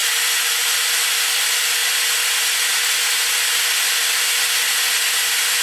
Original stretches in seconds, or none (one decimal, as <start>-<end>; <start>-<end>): 0.0-5.6